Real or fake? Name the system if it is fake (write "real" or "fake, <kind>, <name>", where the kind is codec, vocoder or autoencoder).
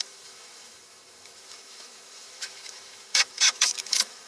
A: fake, autoencoder, DAC-VAE